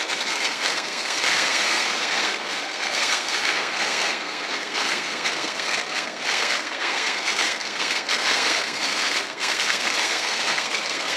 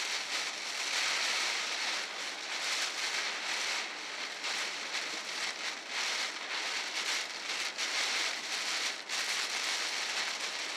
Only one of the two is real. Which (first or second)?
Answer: second